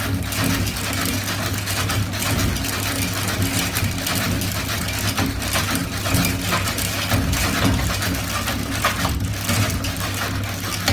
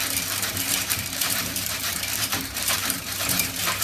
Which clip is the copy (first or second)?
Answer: second